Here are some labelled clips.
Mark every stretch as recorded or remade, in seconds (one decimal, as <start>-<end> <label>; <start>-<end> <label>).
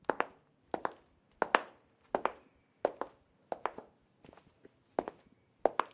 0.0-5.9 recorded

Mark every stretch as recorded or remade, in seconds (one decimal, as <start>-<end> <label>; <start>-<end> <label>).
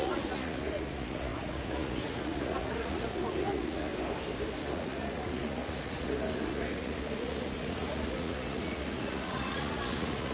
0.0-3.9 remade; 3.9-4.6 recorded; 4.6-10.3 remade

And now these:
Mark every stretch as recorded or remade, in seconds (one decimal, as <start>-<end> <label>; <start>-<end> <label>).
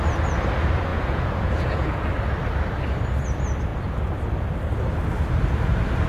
0.0-0.9 recorded; 0.9-2.1 remade; 2.1-6.1 recorded